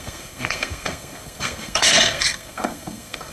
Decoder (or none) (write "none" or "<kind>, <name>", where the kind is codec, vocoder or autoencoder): codec, SNAC